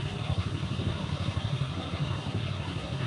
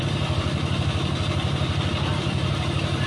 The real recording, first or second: second